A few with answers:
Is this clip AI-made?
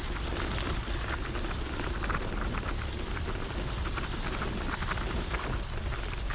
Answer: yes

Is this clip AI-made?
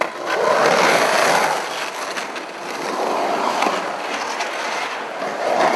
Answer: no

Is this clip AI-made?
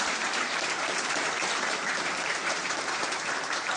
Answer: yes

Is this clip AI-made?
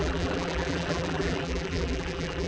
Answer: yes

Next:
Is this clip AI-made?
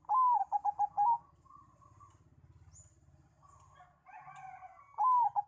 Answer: no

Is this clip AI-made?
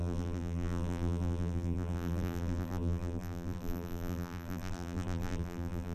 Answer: yes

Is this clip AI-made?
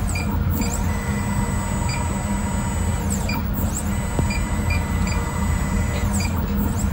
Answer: no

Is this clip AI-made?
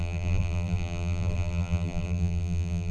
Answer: yes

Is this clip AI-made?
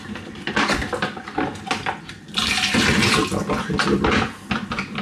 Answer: no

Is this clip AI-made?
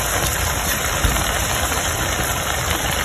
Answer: yes